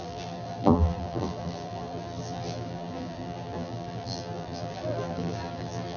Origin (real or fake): fake